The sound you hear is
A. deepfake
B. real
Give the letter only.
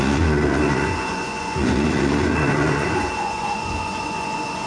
A